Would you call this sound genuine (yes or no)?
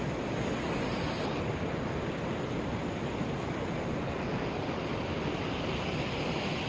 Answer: yes